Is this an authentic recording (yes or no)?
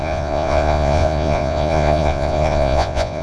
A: no